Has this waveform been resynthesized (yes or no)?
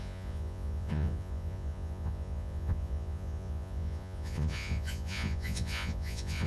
yes